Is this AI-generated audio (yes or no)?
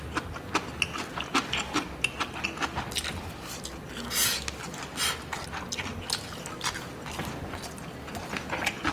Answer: no